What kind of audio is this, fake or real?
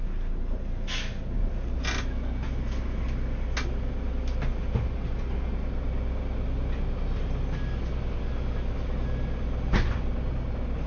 real